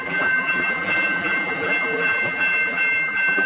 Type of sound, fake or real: fake